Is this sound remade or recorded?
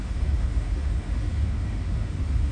remade